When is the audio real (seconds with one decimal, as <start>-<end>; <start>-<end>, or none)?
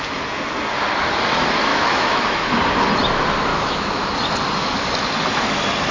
0.0-1.7; 2.6-3.5; 4.1-5.9